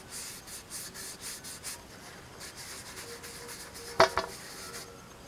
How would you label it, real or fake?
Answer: real